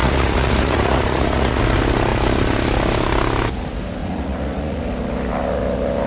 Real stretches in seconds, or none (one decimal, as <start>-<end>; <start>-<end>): 1.6-4.0; 4.8-6.1